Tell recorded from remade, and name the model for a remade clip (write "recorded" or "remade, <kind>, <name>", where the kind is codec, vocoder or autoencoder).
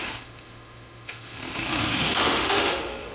remade, autoencoder, DAC-VAE